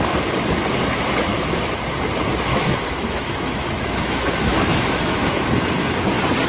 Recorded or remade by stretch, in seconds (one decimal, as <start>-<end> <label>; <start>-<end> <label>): 0.0-1.3 recorded; 1.3-1.8 remade; 1.8-2.5 recorded; 2.5-5.7 remade; 5.7-6.5 recorded